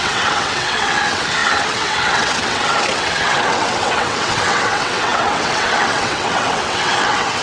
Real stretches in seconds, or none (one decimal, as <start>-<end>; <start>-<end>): none